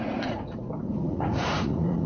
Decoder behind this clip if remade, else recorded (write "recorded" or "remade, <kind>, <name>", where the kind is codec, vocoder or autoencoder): remade, vocoder, Vocos